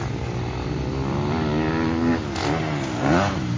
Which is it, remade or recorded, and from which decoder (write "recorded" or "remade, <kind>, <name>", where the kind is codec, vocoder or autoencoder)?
recorded